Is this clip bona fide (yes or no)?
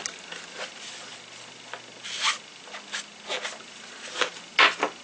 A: yes